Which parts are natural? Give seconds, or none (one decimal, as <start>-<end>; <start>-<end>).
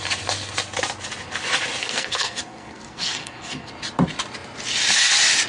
0.0-1.8; 3.7-5.5